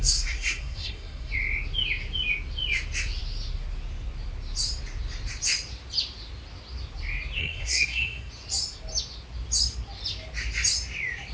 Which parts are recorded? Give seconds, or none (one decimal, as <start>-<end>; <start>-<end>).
1.3-7.4; 8.3-11.3